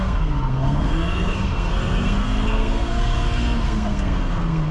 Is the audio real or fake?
fake